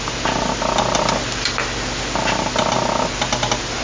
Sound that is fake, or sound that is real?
real